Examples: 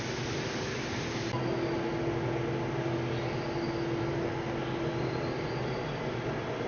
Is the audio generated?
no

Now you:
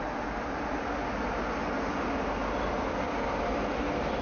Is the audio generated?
no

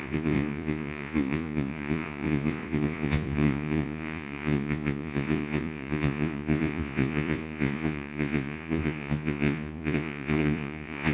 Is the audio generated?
yes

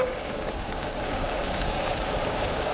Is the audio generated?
yes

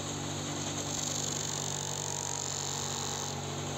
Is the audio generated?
no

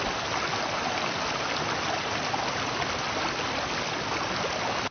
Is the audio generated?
no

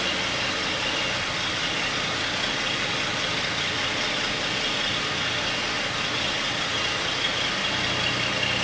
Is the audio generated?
no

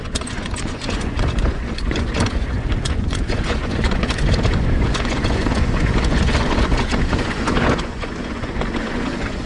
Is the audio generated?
yes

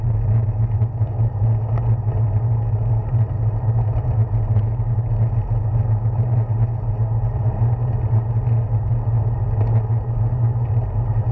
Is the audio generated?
no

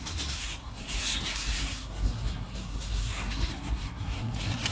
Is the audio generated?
yes